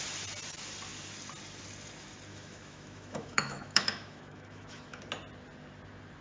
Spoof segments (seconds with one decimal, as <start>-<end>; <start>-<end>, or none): 2.3-5.0